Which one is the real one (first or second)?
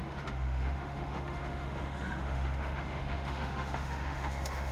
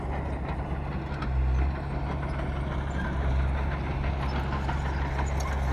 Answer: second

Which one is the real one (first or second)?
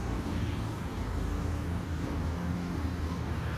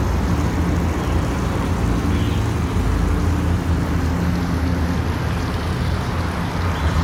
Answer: second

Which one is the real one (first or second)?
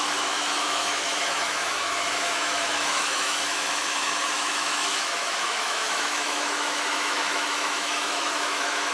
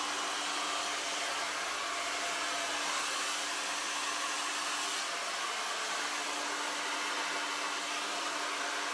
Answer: second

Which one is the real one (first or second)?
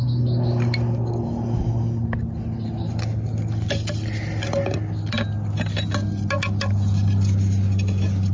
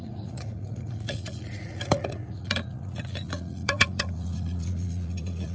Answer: first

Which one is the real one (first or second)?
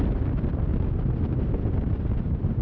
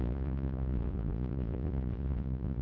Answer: first